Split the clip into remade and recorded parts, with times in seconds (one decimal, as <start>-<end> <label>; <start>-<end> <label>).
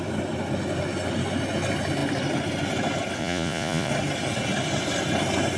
0.0-3.2 recorded; 3.2-3.9 remade; 3.9-5.6 recorded